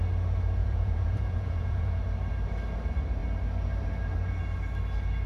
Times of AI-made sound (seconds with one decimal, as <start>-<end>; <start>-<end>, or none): 0.6-2.0